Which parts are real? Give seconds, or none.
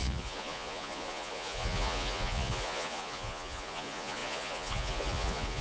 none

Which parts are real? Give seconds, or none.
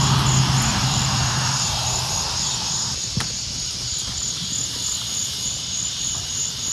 0.0-0.7; 2.1-5.5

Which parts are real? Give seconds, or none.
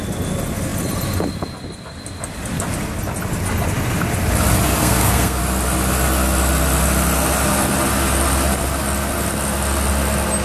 0.0-4.8; 5.4-10.4